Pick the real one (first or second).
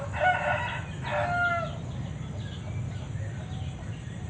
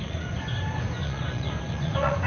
first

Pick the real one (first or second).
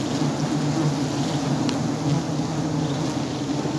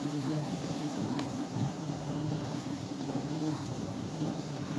first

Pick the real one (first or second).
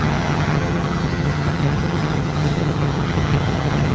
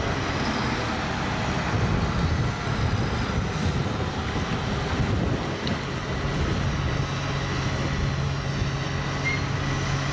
second